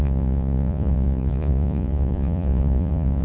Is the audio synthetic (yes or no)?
yes